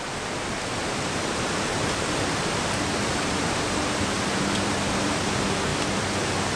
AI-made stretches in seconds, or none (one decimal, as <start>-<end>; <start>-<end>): 0.8-3.0